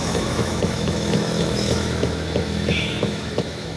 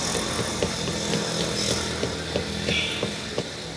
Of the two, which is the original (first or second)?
second